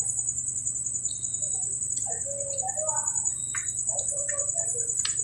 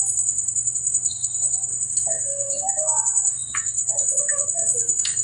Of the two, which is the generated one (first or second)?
second